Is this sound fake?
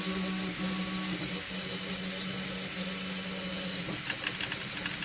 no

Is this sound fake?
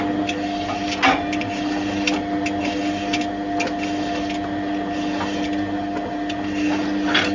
no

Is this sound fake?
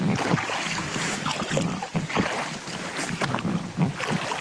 no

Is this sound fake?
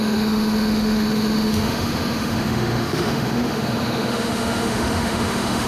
yes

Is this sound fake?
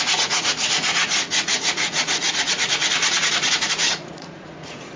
yes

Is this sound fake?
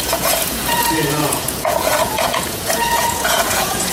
yes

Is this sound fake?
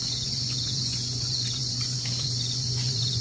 yes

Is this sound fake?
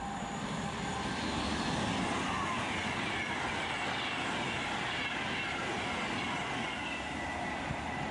no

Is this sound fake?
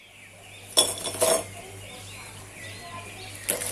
no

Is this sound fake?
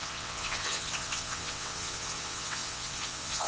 yes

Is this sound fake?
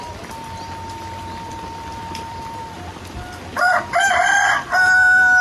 yes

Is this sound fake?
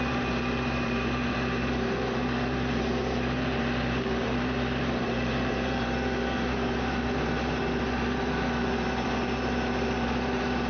yes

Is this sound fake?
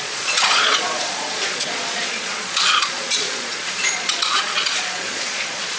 yes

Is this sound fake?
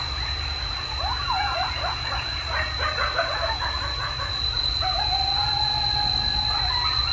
yes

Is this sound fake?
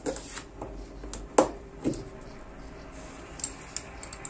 no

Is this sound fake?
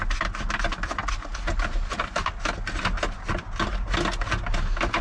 no